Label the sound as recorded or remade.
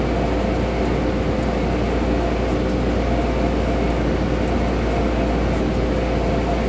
recorded